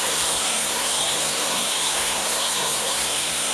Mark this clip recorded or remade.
remade